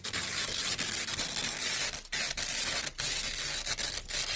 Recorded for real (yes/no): yes